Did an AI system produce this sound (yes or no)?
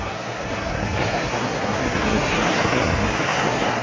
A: yes